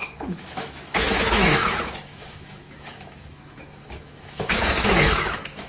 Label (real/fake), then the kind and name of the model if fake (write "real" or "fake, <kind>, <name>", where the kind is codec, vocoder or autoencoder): fake, autoencoder, DAC-VAE